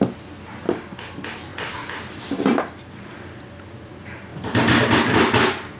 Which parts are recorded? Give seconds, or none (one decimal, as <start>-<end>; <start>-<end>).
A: 0.0-5.8